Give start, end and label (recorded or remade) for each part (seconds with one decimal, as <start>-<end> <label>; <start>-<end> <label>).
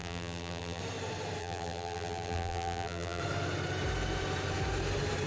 0.0-0.8 remade; 0.8-1.4 recorded; 1.4-3.2 remade; 3.2-5.3 recorded